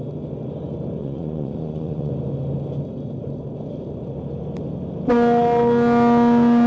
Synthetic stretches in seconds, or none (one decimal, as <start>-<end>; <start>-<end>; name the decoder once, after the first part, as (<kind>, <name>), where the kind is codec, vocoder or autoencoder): 1.0-2.1 (vocoder, Vocos)